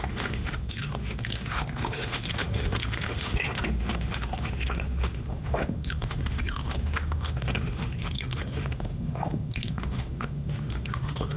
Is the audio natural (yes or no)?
no